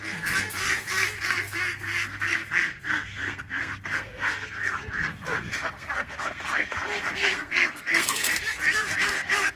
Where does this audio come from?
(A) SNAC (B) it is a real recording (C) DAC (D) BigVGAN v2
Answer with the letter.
A